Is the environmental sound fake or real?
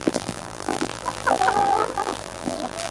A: fake